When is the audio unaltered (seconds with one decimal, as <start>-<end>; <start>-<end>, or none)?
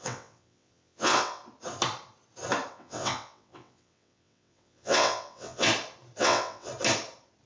1.4-2.7; 5.7-6.2; 6.7-7.5